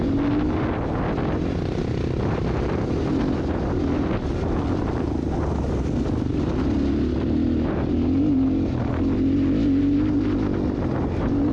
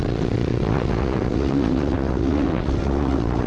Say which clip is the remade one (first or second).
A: second